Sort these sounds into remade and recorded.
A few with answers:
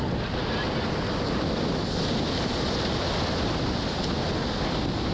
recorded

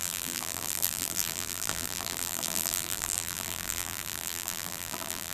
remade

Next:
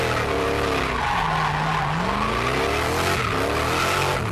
recorded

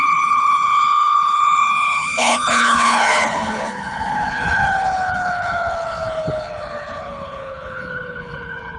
remade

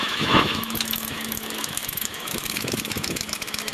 remade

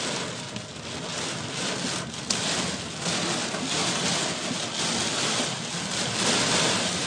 recorded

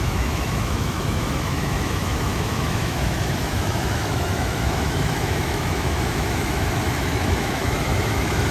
remade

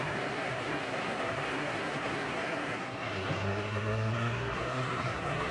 remade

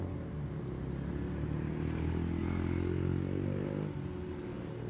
recorded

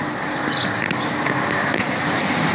recorded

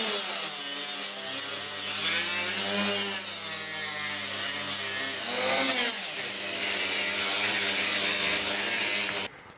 recorded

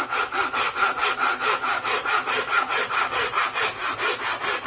recorded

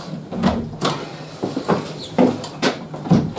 recorded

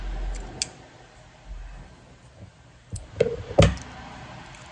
recorded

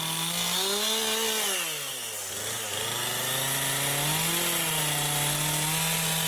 recorded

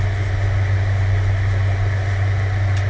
recorded